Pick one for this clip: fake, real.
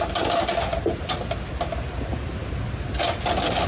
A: real